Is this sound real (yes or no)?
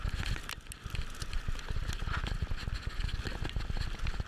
yes